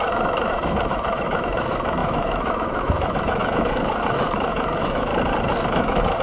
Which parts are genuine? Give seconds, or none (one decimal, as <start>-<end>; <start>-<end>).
5.1-5.7